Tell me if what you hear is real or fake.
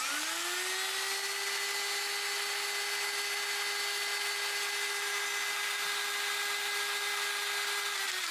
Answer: real